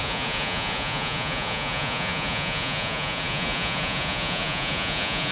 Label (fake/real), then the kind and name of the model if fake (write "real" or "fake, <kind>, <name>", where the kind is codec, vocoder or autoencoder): fake, vocoder, Vocos